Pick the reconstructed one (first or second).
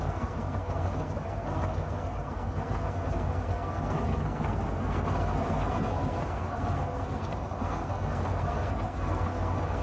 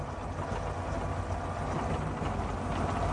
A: first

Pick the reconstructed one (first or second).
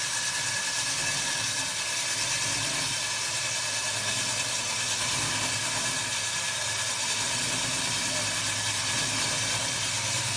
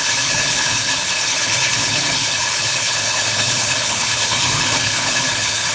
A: second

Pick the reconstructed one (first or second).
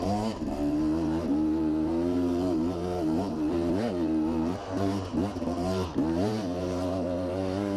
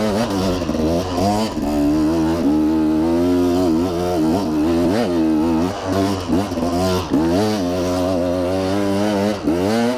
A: first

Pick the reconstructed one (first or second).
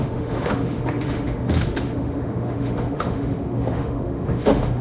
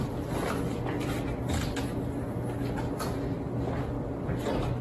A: first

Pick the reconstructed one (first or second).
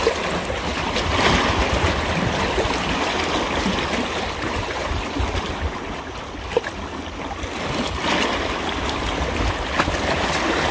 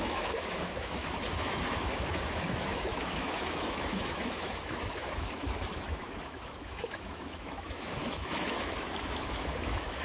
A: second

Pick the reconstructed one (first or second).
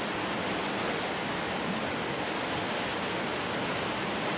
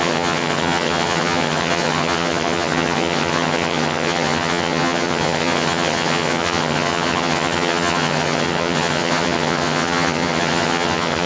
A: second